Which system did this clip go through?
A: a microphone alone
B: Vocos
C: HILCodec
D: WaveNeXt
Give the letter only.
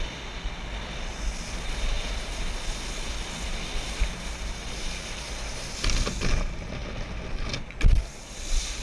A